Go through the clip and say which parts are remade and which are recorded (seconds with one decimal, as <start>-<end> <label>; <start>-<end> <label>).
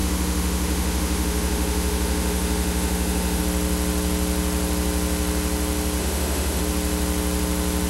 0.0-3.4 remade; 3.4-6.0 recorded; 6.0-6.6 remade; 6.6-7.9 recorded